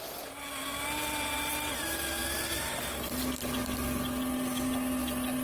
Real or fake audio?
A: real